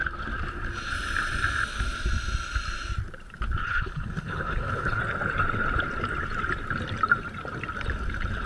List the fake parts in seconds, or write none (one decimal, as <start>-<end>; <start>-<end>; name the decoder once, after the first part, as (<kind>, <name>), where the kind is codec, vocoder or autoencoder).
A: 3.6-5.0 (codec, HILCodec)

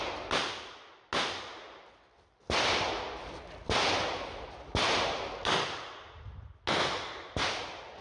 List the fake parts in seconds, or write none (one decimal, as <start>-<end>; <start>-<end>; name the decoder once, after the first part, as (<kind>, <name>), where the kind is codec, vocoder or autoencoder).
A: none

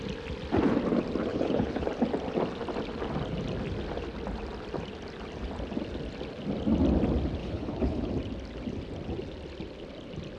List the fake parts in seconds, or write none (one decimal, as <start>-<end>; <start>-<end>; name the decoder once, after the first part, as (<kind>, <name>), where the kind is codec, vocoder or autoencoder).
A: 1.3-1.9 (codec, HILCodec); 7.4-8.1

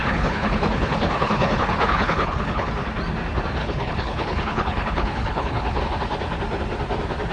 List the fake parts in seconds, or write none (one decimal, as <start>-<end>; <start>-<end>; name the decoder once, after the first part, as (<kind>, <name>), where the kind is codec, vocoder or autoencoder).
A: 0.0-2.7 (codec, HILCodec); 3.6-5.8

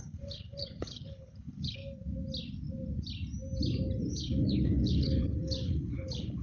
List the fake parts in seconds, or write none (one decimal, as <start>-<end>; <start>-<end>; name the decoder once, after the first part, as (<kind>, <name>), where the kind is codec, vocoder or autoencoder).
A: 0.0-1.8 (codec, HILCodec); 4.1-6.4

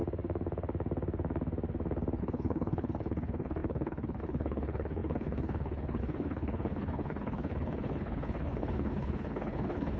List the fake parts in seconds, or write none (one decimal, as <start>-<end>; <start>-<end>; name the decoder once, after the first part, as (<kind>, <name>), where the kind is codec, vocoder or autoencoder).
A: 2.2-10.0 (codec, HILCodec)

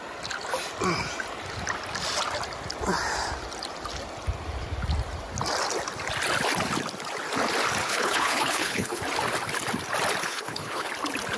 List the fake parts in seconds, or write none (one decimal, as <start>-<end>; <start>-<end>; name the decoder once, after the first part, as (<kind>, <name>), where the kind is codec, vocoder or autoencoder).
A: 7.8-9.0 (codec, HILCodec); 10.2-10.9